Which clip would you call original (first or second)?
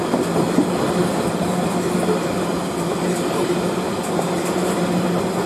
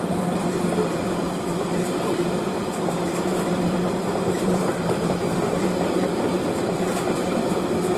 first